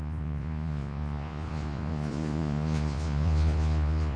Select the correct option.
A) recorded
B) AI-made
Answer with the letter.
B